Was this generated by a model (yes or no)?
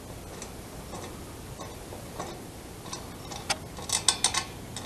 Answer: no